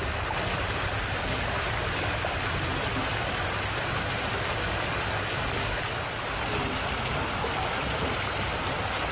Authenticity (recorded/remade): recorded